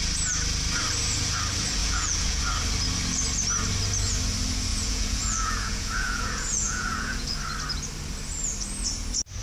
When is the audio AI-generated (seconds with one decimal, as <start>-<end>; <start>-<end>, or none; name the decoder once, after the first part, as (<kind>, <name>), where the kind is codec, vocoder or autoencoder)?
1.8-2.4 (vocoder, Vocos); 4.7-7.4